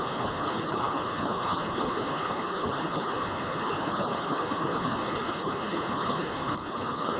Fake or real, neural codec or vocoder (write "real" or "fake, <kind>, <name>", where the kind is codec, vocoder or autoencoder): fake, codec, HILCodec